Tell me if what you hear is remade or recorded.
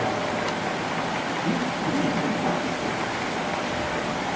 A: recorded